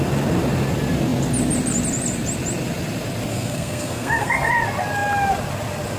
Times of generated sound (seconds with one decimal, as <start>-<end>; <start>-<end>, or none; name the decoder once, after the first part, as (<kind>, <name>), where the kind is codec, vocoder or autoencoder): 3.3-4.5 (codec, SNAC)